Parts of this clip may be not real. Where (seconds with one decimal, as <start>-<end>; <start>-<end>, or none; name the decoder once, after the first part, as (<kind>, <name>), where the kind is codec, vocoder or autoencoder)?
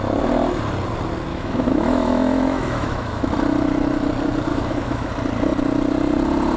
1.3-3.3 (autoencoder, DAC-VAE); 4.5-5.1